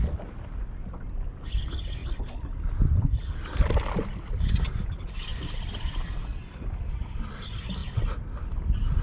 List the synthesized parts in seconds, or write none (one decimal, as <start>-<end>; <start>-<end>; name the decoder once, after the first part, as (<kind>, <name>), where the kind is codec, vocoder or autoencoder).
none